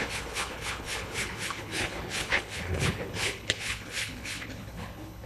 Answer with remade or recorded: remade